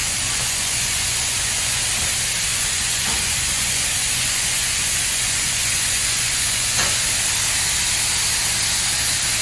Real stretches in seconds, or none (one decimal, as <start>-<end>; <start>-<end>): 1.8-2.5; 7.1-9.4